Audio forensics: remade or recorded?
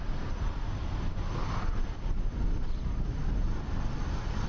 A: recorded